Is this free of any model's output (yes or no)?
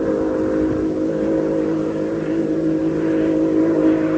yes